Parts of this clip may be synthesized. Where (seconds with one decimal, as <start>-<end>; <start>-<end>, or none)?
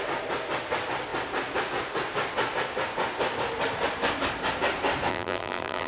5.1-5.9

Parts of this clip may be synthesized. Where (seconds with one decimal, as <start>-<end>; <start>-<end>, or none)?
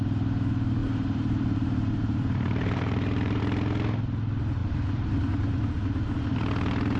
0.8-3.4; 4.6-5.7